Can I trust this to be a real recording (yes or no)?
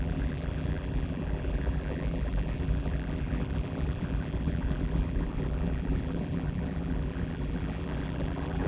no